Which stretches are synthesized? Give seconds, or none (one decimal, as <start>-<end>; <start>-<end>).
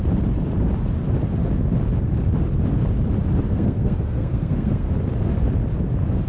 3.5-4.9